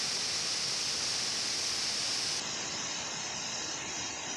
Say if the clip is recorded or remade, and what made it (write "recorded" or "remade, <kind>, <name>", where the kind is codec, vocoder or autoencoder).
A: recorded